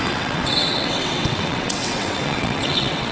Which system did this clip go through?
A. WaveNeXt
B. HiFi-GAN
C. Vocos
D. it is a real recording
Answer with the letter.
A